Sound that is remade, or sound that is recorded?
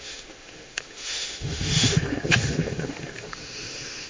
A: remade